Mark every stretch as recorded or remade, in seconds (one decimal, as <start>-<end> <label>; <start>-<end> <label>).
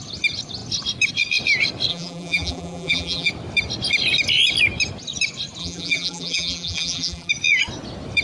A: 0.0-1.9 recorded; 1.9-3.3 remade; 3.3-5.6 recorded; 5.6-7.3 remade; 7.3-8.2 recorded